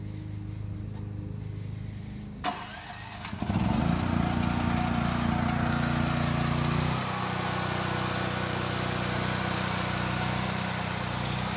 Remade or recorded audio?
recorded